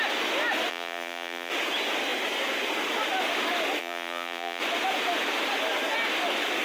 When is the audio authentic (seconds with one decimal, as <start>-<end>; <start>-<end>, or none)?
0.0-0.7; 1.5-3.8; 4.6-6.6